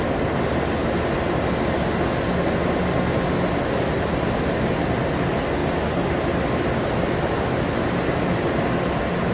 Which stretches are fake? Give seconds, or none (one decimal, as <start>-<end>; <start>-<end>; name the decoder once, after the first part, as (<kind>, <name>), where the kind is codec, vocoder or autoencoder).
none